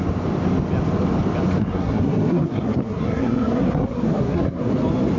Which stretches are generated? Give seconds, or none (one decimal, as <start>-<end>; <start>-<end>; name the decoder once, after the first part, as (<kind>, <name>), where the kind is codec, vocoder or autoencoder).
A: 1.6-4.7 (codec, SNAC)